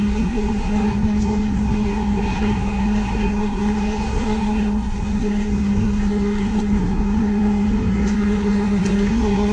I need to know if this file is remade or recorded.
remade